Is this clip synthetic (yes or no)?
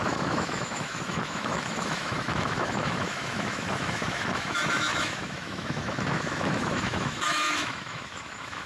yes